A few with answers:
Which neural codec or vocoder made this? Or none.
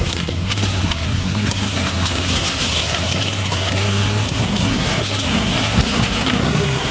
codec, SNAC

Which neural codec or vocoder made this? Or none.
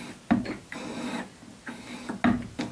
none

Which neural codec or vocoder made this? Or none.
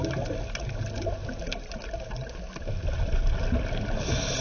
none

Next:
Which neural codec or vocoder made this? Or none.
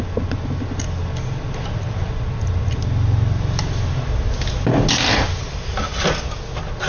none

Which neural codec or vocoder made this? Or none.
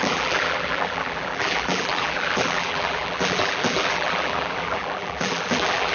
vocoder, BigVGAN v2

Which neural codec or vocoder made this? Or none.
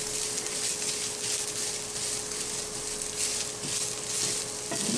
none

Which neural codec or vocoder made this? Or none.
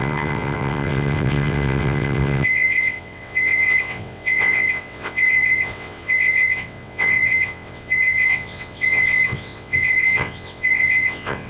vocoder, WaveNeXt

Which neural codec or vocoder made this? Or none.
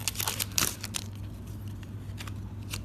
none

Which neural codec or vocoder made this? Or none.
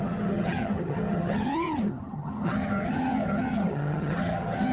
vocoder, HiFi-GAN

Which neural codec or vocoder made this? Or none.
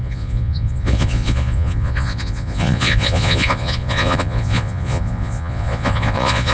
vocoder, Vocos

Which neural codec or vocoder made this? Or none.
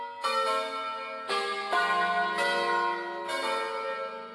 none